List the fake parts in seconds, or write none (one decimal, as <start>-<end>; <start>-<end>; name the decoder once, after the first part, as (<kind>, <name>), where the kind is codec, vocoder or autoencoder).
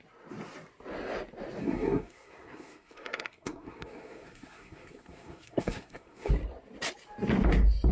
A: 1.6-6.3 (codec, SNAC)